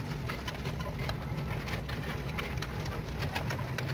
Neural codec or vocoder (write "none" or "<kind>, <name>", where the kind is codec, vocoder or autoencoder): none